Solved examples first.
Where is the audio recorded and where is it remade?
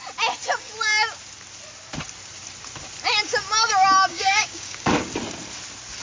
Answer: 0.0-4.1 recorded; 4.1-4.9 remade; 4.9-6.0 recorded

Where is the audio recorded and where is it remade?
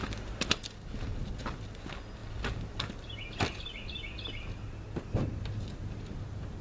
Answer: 0.0-6.6 recorded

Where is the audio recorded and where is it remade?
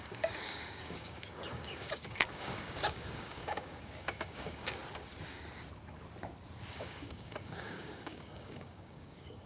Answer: 0.0-4.8 remade; 4.8-6.7 recorded; 6.7-9.5 remade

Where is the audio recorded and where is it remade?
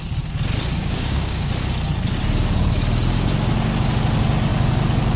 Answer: 0.0-0.8 recorded; 0.8-1.5 remade; 1.5-5.2 recorded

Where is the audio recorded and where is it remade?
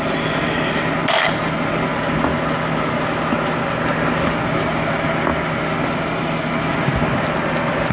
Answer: 0.0-7.9 recorded